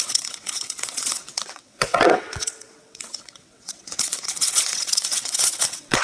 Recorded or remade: remade